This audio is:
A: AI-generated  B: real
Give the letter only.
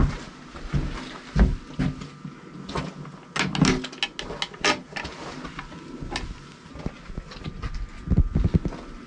B